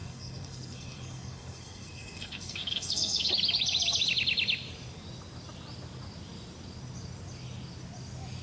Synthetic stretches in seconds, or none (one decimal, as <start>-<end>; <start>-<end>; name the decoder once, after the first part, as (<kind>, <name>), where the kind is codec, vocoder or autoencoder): 0.0-3.3 (codec, SNAC)